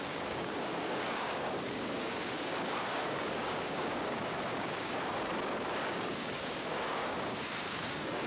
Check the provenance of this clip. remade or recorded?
remade